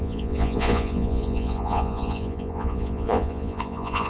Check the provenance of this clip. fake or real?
fake